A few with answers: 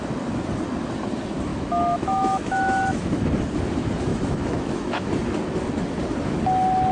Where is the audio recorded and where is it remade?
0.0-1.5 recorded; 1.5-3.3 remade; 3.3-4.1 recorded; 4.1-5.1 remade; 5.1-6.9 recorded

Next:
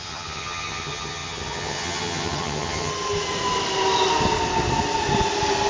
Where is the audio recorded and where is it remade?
0.0-2.9 remade; 2.9-5.7 recorded

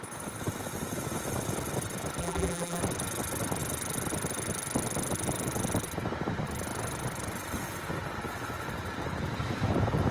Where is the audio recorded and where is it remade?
0.0-2.2 recorded; 2.2-2.8 remade; 2.8-10.1 recorded

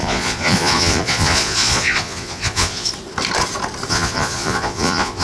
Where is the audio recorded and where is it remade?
0.0-2.9 remade; 2.9-3.9 recorded; 3.9-5.2 remade

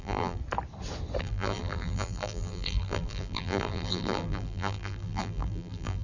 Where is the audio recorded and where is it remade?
0.0-0.4 remade; 0.4-1.2 recorded; 1.2-6.0 remade

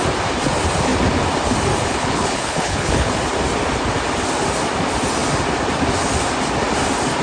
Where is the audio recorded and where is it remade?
0.0-1.9 recorded; 1.9-3.1 remade; 3.1-7.2 recorded